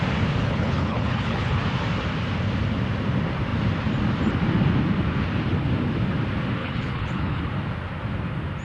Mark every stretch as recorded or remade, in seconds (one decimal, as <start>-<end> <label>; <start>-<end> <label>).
0.0-0.4 recorded; 0.4-1.6 remade; 1.6-6.6 recorded; 6.6-7.4 remade; 7.4-8.6 recorded